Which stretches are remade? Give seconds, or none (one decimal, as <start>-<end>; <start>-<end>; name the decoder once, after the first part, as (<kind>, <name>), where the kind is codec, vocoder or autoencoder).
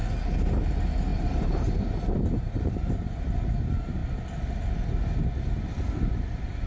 1.1-3.1 (vocoder, BigVGAN v2)